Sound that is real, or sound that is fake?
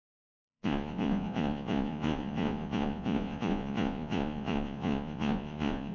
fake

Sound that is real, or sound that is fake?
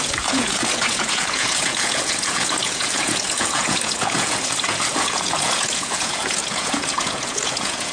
fake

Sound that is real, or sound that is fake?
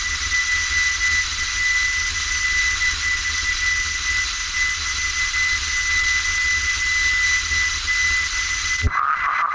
real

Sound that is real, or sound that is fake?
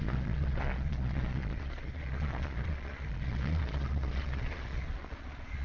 fake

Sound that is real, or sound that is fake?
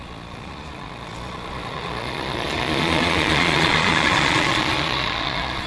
fake